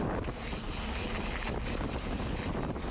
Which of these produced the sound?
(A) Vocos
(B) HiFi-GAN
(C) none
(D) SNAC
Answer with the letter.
C